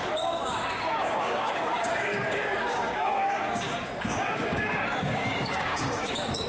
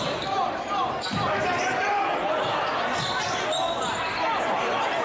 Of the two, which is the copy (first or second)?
first